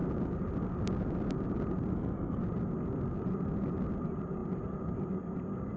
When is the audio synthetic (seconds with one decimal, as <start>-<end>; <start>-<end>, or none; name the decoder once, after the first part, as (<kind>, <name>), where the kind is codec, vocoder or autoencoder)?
1.9-2.4 (codec, SNAC)